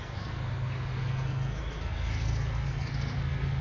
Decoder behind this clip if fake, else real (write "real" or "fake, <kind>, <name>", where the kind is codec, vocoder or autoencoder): fake, codec, SNAC